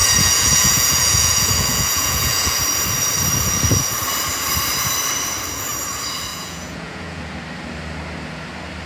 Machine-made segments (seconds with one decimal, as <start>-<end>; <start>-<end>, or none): 0.0-2.6; 6.3-7.2